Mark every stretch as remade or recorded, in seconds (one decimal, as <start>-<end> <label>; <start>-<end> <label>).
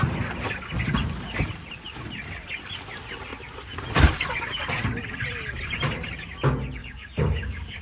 0.0-6.8 recorded; 6.8-7.8 remade